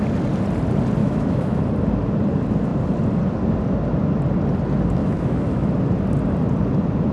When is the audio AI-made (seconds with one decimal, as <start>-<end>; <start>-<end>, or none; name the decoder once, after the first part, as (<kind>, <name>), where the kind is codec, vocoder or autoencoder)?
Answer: 1.0-1.6 (autoencoder, DAC-VAE); 5.0-5.7